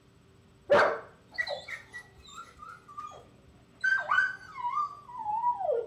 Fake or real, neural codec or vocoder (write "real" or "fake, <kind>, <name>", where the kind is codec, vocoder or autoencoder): real